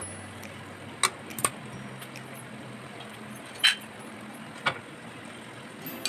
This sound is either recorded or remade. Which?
recorded